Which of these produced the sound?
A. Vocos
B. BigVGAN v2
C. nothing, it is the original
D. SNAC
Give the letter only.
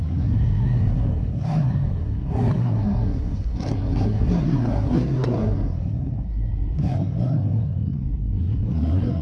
D